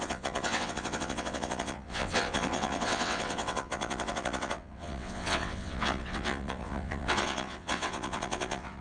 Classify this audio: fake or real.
fake